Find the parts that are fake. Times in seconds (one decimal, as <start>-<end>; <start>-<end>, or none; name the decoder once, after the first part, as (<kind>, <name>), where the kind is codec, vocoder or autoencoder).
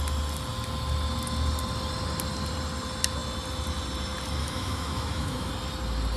4.4-5.5 (autoencoder, DAC-VAE)